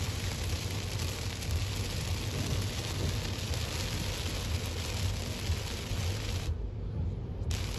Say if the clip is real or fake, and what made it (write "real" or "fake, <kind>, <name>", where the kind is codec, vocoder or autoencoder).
real